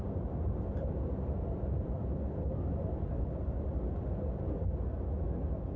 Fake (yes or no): no